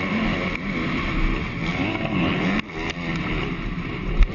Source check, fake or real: real